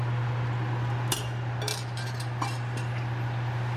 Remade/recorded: recorded